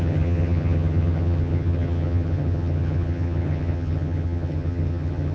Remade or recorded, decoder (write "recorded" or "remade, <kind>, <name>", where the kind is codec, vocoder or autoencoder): remade, vocoder, HiFi-GAN